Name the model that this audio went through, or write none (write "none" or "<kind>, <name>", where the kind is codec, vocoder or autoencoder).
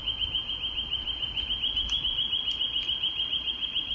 none